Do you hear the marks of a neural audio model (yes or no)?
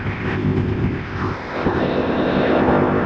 yes